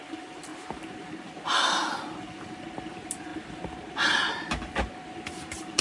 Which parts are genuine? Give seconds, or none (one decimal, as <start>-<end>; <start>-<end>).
0.0-5.8